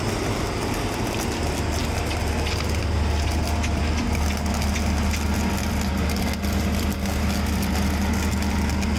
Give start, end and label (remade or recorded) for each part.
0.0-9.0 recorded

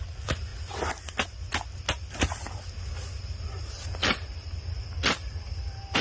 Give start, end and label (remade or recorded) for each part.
0.0-6.0 recorded

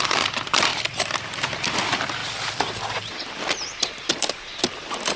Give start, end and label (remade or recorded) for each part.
0.0-5.2 recorded

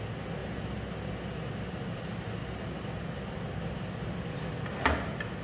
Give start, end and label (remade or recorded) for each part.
0.0-5.4 recorded

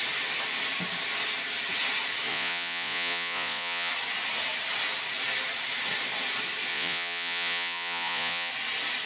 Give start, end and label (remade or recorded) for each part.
0.0-2.3 recorded; 2.3-3.9 remade; 3.9-6.7 recorded; 6.7-8.5 remade; 8.5-9.1 recorded

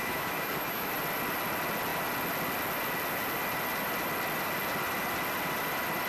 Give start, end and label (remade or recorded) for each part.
0.0-0.9 remade; 0.9-6.1 recorded

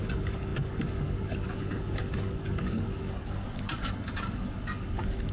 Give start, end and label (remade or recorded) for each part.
0.0-5.3 remade

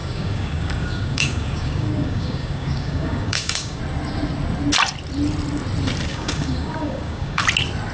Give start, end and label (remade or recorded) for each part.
0.0-3.8 remade; 3.8-6.1 recorded; 6.1-7.4 remade; 7.4-7.9 recorded